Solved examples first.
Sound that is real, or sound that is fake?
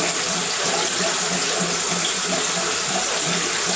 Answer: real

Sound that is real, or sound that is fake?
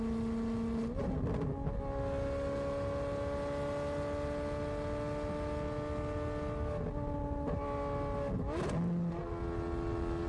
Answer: real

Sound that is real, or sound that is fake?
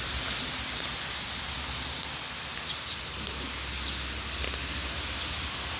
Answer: real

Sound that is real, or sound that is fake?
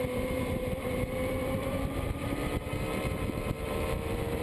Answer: fake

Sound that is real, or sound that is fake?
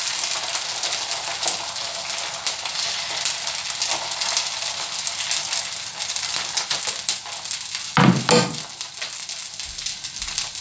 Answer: real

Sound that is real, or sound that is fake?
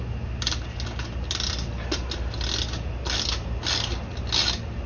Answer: real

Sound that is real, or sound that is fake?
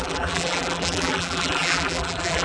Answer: fake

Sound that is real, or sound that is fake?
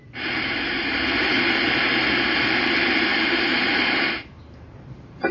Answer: fake